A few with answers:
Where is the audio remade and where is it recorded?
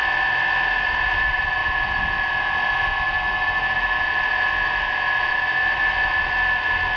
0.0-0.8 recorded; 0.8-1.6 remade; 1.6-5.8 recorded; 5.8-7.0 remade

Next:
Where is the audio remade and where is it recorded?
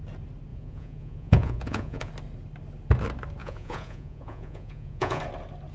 0.0-0.5 recorded; 0.5-2.1 remade; 2.1-3.4 recorded; 3.4-5.2 remade; 5.2-5.7 recorded